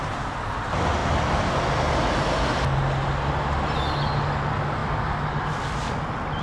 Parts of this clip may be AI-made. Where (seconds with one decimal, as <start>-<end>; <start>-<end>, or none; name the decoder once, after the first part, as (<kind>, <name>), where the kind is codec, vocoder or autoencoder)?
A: none